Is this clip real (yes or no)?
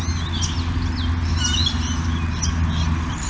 yes